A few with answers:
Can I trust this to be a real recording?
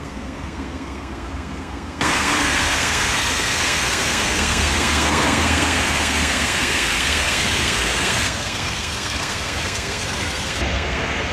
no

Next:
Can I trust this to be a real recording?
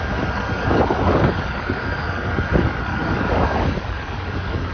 no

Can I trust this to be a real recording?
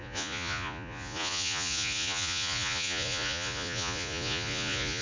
no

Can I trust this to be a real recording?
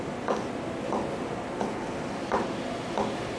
yes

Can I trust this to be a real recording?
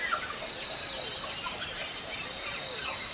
yes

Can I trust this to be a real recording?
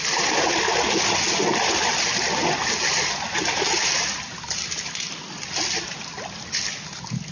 yes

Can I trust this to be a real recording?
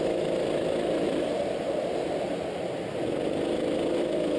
no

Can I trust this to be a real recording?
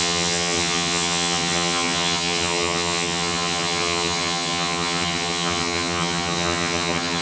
no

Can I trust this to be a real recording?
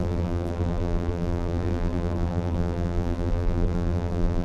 no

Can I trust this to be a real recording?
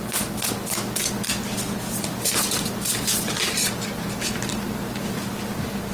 yes